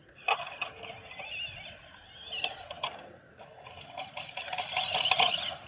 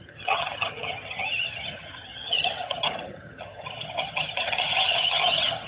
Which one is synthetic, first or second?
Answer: second